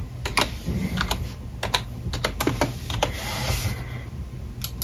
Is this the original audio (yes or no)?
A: yes